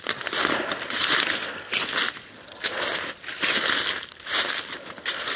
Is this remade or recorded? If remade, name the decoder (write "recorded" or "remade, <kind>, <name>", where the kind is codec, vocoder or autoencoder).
recorded